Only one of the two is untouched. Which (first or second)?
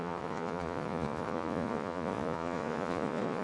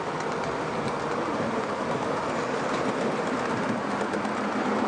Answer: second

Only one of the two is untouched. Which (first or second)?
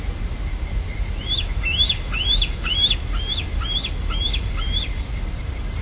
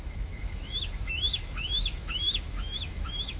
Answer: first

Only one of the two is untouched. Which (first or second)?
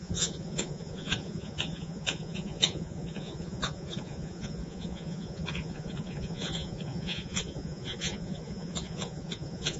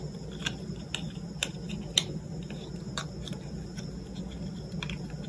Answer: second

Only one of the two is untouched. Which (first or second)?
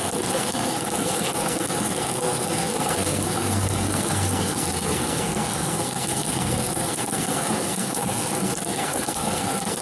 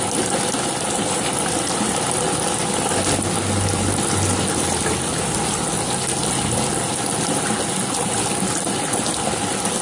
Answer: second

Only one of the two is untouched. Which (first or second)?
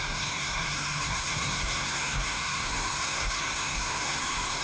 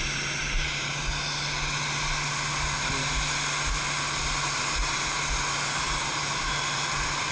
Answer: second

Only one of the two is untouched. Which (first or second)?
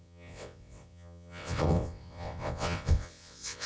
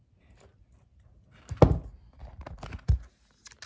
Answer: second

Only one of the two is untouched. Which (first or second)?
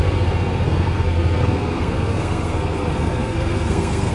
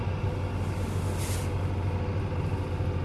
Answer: second